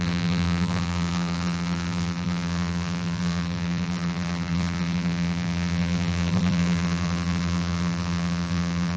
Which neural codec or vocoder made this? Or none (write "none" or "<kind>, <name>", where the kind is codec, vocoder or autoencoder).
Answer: vocoder, BigVGAN v2